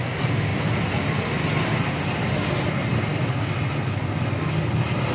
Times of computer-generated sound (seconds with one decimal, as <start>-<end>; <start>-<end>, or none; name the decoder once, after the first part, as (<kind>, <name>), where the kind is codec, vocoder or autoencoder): none